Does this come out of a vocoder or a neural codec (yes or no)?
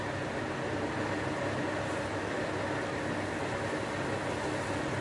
no